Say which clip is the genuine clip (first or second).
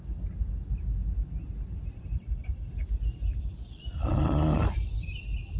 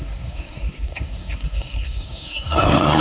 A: first